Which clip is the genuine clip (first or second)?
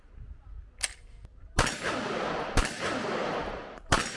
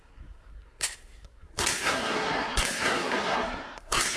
first